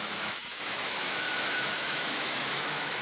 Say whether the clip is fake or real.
fake